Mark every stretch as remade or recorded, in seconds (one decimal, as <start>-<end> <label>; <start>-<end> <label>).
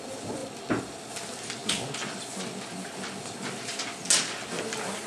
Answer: 0.0-5.1 recorded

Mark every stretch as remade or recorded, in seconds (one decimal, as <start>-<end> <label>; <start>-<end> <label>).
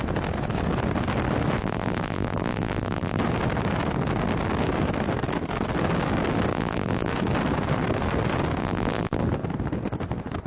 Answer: 0.0-1.6 recorded; 1.6-3.2 remade; 3.2-6.5 recorded; 6.5-7.1 remade; 7.1-8.6 recorded; 8.6-9.2 remade; 9.2-10.5 recorded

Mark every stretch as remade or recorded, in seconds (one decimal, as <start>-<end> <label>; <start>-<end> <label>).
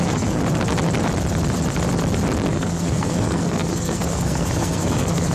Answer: 0.0-0.4 remade; 0.4-2.5 recorded; 2.5-5.3 remade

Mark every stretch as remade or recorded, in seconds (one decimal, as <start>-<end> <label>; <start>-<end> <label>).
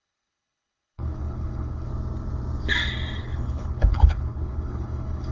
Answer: 0.0-1.9 remade; 1.9-3.2 recorded; 3.2-5.3 remade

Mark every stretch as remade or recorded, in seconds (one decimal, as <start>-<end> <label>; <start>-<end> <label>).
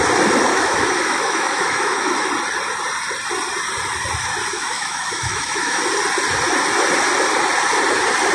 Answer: 0.0-0.5 recorded; 0.5-2.3 remade; 2.3-4.5 recorded; 4.5-5.8 remade; 5.8-8.3 recorded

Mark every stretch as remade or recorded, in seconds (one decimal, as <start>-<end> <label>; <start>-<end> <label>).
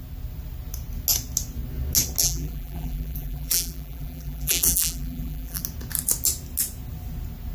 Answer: 0.0-2.2 recorded; 2.2-5.6 remade; 5.6-7.5 recorded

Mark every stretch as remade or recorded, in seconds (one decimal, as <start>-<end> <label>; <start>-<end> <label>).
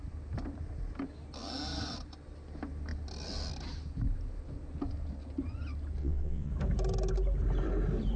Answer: 0.0-6.0 recorded; 6.0-6.5 remade; 6.5-8.2 recorded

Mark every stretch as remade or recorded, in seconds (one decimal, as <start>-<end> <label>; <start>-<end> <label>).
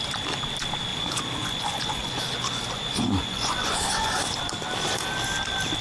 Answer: 0.0-0.9 recorded; 0.9-4.4 remade; 4.4-5.8 recorded